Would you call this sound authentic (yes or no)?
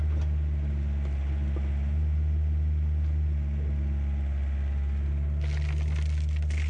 yes